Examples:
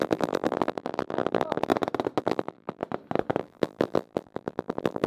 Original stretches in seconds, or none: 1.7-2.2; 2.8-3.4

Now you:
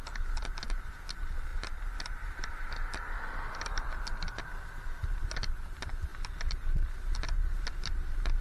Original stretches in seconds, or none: 0.0-8.4

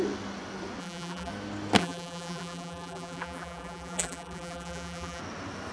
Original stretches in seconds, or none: 0.0-0.8; 1.3-1.8; 5.2-5.7

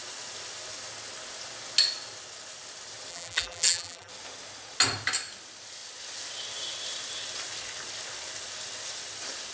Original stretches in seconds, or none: 0.0-3.1; 4.1-9.5

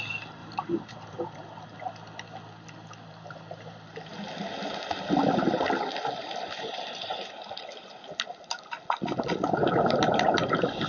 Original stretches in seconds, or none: 0.0-0.4; 1.2-10.9

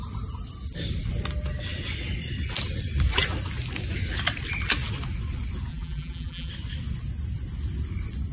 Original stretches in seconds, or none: 0.0-5.7; 6.5-8.3

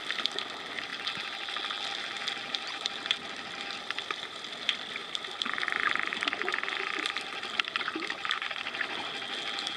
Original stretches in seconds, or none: 0.0-9.8

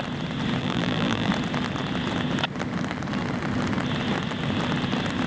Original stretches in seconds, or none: 0.0-0.6; 1.3-5.3